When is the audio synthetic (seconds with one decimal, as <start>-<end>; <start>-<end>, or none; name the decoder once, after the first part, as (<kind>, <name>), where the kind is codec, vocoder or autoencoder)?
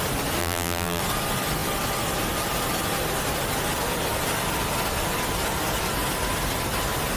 0.4-1.0 (vocoder, BigVGAN v2)